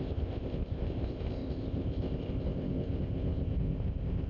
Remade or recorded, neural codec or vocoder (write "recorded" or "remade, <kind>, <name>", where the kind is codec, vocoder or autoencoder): remade, codec, ZipCodec